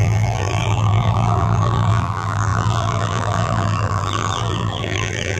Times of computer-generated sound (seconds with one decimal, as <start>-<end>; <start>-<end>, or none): 0.0-5.4